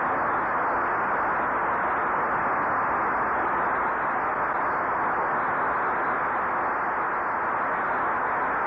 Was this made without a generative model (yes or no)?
yes